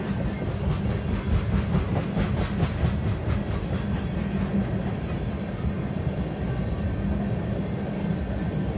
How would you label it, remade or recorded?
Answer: recorded